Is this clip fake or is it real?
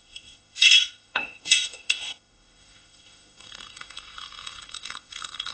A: fake